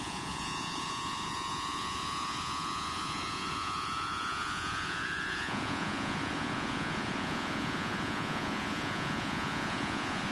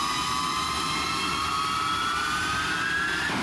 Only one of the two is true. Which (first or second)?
second